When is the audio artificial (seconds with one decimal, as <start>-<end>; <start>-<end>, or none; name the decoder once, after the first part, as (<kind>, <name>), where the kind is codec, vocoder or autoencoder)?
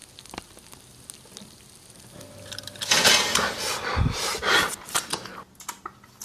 4.3-5.1 (vocoder, BigVGAN v2)